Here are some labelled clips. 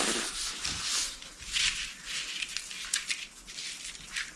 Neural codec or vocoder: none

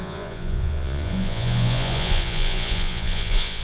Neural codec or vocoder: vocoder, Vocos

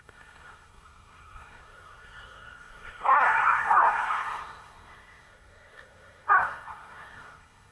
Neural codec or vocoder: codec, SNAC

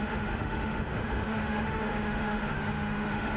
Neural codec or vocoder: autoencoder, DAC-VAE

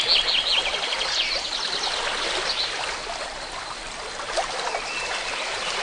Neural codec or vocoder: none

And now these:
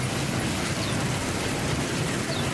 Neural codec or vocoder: none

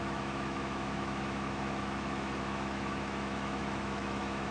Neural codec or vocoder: autoencoder, DAC-VAE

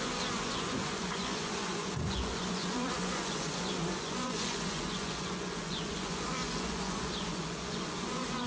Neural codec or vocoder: vocoder, Vocos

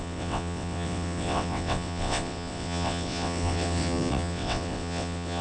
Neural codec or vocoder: vocoder, WaveNeXt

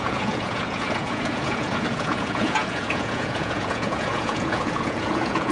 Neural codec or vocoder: vocoder, Vocos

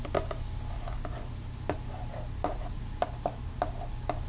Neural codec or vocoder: none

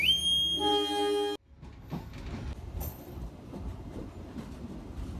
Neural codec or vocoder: none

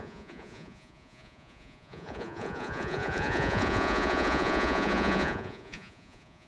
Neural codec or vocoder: vocoder, Vocos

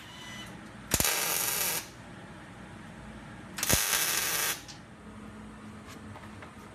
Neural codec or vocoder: none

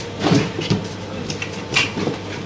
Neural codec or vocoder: vocoder, BigVGAN v2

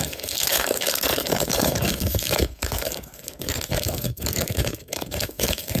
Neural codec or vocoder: codec, SNAC